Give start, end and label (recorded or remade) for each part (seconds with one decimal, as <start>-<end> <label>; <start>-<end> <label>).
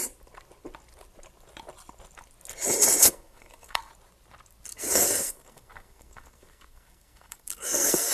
0.0-3.0 recorded; 3.0-3.9 remade; 3.9-4.7 recorded; 4.7-8.1 remade